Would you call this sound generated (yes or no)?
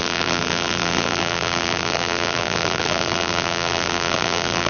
yes